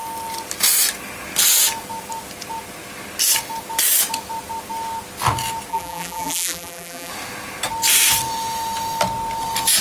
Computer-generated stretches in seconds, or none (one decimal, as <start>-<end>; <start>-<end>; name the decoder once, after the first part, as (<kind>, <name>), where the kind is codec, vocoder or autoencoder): 5.7-7.1 (vocoder, BigVGAN v2)

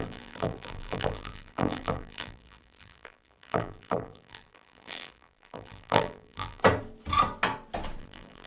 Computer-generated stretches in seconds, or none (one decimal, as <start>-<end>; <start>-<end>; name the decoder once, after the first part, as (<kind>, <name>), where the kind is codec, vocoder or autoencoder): 0.0-6.6 (vocoder, BigVGAN v2); 8.0-8.5

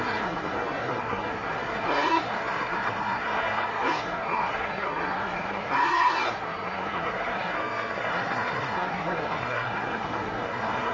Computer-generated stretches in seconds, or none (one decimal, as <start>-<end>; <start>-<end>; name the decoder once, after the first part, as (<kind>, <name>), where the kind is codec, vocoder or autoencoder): 0.0-10.9 (codec, SNAC)

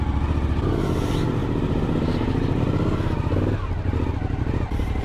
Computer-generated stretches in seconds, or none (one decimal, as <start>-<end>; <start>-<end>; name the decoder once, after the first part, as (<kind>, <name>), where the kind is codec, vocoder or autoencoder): 1.4-2.6 (vocoder, BigVGAN v2)

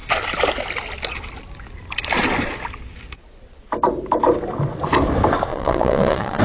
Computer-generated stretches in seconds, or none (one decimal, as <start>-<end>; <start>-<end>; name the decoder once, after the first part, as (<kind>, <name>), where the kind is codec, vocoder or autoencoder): 5.5-6.4 (vocoder, WaveNeXt)

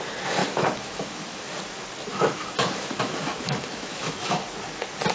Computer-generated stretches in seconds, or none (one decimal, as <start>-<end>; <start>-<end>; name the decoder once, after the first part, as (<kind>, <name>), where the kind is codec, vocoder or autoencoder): 0.4-1.6 (autoencoder, DAC-VAE); 2.1-4.4

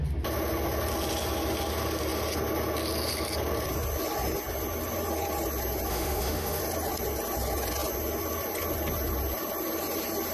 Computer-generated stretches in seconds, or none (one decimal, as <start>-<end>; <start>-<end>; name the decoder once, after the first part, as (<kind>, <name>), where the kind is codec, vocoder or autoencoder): 5.9-6.6 (autoencoder, DAC-VAE)

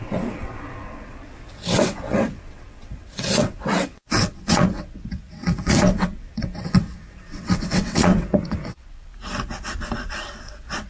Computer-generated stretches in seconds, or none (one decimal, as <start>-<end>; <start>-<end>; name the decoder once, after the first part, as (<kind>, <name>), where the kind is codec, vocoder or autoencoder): 0.0-9.1 (vocoder, WaveNeXt); 10.1-10.9